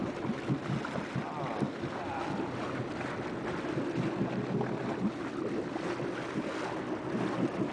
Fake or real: real